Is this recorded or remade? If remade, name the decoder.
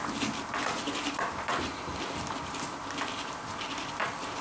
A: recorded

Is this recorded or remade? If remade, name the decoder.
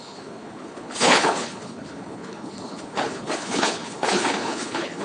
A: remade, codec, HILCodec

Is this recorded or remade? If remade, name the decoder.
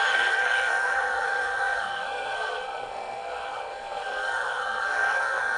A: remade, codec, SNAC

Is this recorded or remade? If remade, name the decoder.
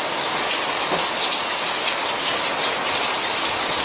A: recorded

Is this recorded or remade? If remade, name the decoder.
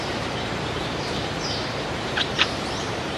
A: remade, vocoder, BigVGAN v2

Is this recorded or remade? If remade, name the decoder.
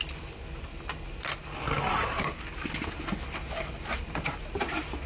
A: recorded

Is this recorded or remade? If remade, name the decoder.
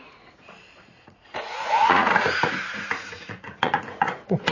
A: remade, vocoder, Vocos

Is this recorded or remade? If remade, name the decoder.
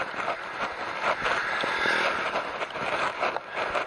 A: recorded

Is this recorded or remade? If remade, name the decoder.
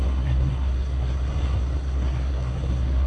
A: remade, codec, SNAC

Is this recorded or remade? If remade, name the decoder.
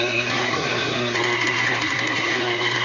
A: remade, codec, SNAC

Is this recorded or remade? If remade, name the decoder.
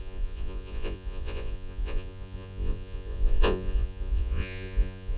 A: remade, vocoder, Vocos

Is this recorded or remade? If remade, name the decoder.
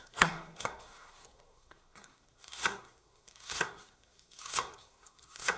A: remade, codec, SNAC